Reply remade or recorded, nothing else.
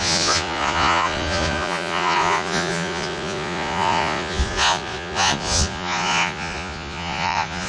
remade